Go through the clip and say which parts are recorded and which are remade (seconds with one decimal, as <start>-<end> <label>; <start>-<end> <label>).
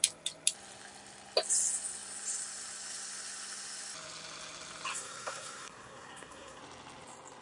0.0-4.9 recorded; 4.9-6.6 remade; 6.6-7.4 recorded